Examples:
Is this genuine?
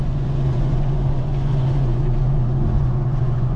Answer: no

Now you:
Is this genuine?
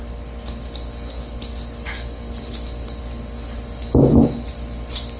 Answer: yes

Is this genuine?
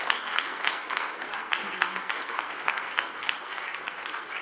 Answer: no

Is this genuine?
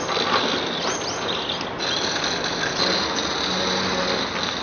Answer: yes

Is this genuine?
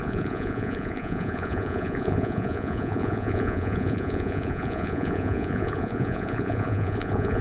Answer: no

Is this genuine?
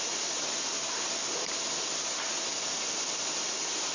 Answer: yes